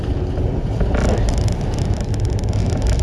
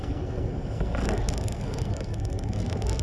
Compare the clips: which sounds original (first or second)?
first